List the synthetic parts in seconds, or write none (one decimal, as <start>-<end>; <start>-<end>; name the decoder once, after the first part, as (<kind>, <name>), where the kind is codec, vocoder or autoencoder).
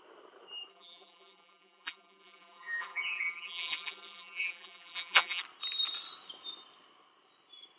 0.7-5.4 (vocoder, BigVGAN v2)